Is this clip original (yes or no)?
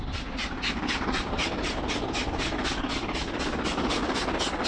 yes